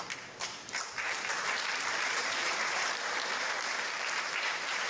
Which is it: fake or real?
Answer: fake